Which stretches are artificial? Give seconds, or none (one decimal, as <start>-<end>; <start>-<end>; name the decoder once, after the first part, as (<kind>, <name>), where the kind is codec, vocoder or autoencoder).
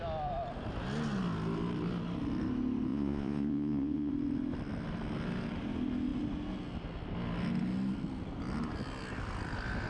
2.9-4.1 (vocoder, Vocos)